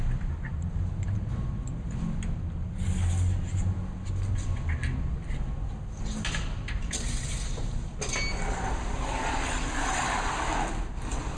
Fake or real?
real